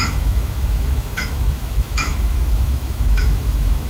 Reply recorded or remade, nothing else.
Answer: remade